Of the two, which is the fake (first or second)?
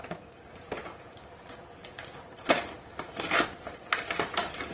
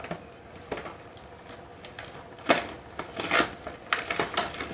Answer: first